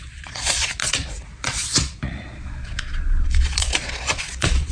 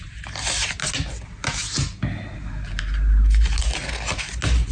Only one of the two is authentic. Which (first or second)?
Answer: second